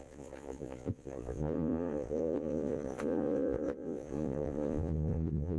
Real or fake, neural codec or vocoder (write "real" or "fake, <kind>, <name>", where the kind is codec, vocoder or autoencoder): fake, vocoder, Vocos